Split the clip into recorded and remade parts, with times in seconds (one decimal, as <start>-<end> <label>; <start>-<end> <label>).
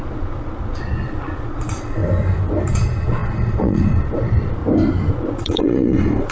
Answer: 0.0-2.0 remade; 2.0-2.7 recorded; 2.7-4.6 remade; 4.6-5.1 recorded; 5.1-6.3 remade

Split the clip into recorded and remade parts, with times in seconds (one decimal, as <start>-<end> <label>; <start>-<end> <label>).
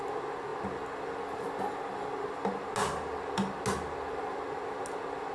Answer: 0.0-5.3 recorded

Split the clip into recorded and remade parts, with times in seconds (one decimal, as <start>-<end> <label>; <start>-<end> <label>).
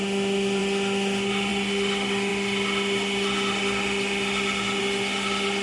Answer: 0.0-5.6 recorded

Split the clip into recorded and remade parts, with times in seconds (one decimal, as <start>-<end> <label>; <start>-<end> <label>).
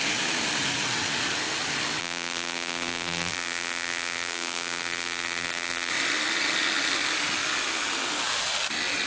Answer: 0.0-2.0 recorded; 2.0-5.9 remade; 5.9-9.1 recorded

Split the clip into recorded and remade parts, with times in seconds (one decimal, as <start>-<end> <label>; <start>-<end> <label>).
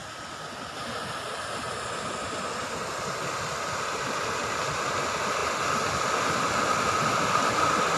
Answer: 0.0-8.0 recorded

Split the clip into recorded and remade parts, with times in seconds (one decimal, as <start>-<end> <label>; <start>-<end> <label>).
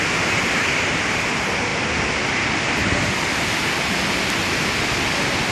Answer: 0.0-5.5 recorded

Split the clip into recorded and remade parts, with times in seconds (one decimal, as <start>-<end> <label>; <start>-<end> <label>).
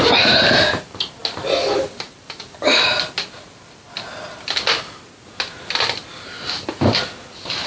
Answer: 0.0-7.7 recorded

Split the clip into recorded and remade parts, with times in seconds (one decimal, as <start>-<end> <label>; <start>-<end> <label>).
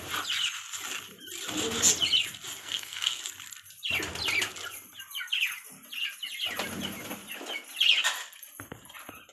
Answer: 0.0-2.6 recorded; 2.6-3.2 remade; 3.2-9.3 recorded